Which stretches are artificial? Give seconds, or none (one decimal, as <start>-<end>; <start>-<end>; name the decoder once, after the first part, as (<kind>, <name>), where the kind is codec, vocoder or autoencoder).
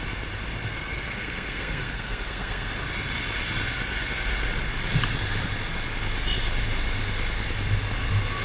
0.7-2.8 (codec, SNAC)